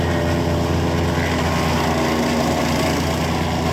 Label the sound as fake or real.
real